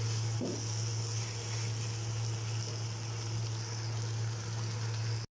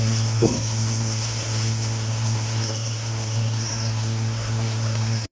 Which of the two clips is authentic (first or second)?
first